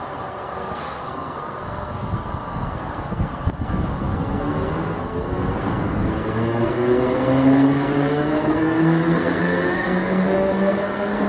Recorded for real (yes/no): no